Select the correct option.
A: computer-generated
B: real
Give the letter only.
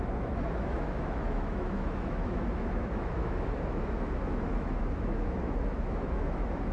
A